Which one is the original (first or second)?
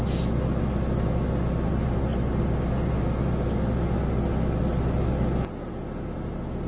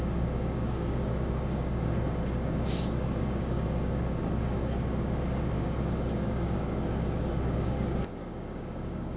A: first